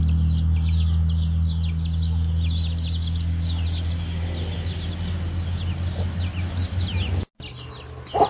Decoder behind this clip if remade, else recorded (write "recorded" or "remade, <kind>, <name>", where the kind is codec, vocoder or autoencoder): recorded